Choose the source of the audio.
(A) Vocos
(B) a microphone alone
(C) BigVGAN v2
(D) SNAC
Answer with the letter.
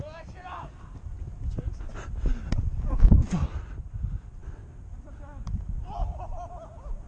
B